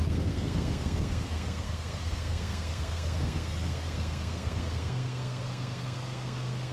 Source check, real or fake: fake